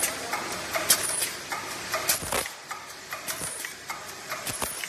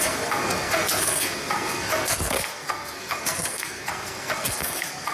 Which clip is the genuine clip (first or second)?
first